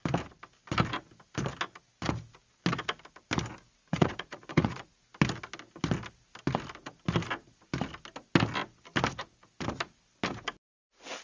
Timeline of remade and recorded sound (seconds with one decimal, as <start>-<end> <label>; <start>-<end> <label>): 0.0-3.8 recorded; 3.8-4.9 remade; 4.9-11.2 recorded